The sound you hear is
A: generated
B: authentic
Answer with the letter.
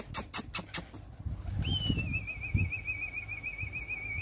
B